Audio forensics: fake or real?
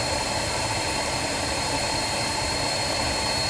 fake